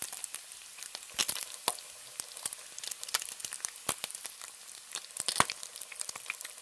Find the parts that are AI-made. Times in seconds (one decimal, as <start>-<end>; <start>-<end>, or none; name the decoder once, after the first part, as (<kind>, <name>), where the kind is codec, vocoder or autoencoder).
none